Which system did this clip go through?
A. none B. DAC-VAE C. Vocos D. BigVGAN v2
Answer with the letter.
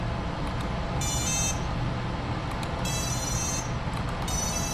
A